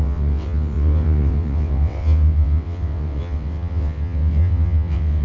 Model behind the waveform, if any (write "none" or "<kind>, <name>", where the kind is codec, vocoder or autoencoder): vocoder, WaveNeXt